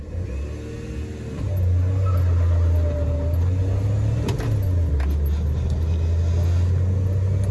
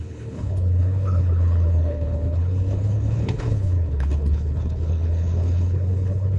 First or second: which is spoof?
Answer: second